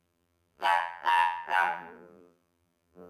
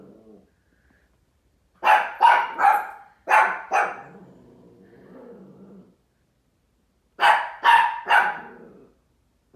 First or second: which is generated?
first